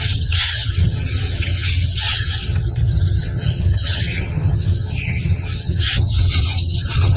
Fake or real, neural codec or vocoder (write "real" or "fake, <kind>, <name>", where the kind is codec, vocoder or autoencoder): fake, vocoder, HiFi-GAN